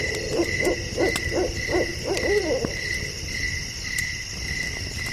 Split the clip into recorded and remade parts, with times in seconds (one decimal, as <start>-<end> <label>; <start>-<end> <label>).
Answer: 0.0-1.5 remade; 1.5-5.1 recorded